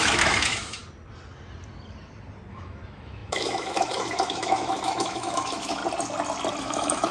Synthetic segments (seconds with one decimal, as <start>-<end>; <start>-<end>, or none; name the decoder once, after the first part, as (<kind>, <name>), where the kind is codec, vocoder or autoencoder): 0.0-0.8 (autoencoder, DAC-VAE); 2.5-5.8; 6.6-7.1